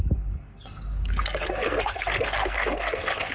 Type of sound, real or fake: fake